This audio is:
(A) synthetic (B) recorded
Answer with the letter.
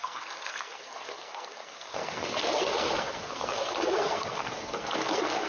A